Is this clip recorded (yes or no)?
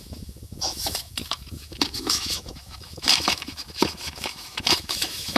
no